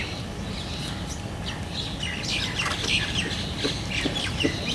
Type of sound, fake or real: real